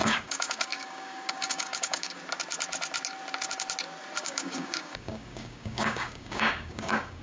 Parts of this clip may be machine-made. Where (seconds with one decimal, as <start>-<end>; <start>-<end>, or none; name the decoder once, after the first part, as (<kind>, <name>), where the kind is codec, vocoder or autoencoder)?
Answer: 0.0-2.2 (codec, DAC); 4.2-7.2